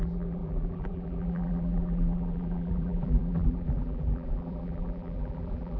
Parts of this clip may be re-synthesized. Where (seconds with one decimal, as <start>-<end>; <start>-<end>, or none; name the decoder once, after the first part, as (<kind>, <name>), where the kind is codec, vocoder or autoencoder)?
0.0-5.8 (vocoder, BigVGAN v2)